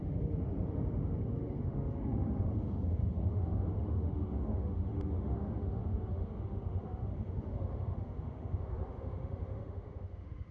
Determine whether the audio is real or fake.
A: fake